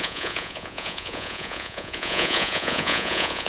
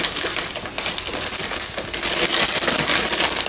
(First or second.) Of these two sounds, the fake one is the first